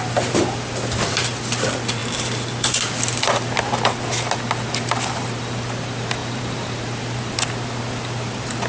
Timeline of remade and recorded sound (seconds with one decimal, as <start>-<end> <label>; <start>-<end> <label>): 0.0-6.2 recorded; 6.2-7.2 remade; 7.2-8.7 recorded